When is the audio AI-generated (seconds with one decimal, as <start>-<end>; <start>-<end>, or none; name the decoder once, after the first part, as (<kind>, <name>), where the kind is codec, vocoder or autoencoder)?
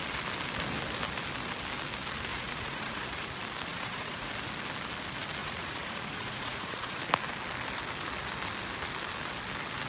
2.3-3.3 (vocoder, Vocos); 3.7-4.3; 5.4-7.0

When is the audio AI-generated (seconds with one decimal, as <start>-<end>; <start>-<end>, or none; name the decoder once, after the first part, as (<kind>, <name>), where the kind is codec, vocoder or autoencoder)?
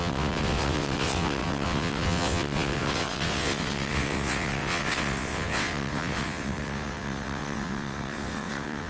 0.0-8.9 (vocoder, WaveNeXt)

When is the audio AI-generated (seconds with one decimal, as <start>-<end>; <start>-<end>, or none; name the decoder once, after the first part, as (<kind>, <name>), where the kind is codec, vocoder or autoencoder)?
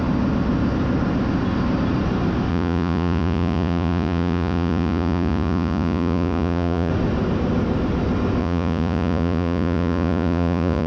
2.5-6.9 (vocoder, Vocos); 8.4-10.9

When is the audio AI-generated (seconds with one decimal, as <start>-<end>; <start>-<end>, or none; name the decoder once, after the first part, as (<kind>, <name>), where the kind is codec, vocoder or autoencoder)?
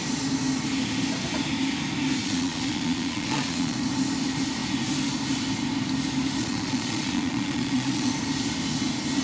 2.2-3.8 (vocoder, Vocos); 6.4-8.1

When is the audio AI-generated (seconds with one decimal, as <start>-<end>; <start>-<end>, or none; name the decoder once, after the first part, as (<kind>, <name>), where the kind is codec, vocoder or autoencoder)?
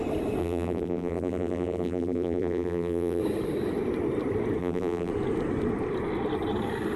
0.4-3.2 (vocoder, BigVGAN v2); 4.6-5.1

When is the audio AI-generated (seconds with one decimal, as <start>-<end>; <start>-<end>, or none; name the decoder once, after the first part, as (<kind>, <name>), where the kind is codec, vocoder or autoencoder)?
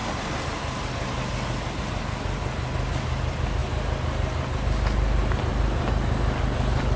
none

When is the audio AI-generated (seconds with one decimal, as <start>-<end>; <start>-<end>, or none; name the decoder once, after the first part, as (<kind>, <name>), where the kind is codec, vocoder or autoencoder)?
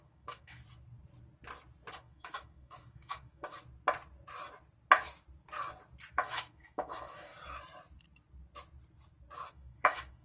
0.0-0.6 (autoencoder, DAC-VAE); 1.9-3.6; 6.1-7.3; 9.5-10.2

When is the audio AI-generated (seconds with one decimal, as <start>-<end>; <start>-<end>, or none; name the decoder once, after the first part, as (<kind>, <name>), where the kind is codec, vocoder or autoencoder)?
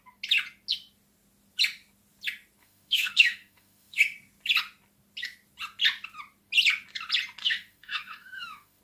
2.6-4.0 (autoencoder, DAC-VAE); 7.4-8.8